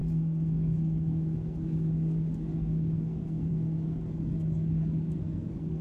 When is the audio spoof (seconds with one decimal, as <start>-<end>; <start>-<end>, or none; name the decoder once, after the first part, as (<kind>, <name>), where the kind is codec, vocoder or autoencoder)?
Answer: 0.0-5.8 (codec, SNAC)

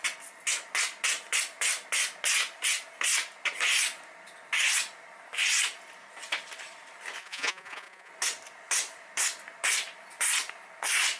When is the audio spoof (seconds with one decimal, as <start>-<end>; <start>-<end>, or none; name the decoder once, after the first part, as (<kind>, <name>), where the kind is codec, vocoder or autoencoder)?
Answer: 7.2-8.1 (vocoder, Vocos)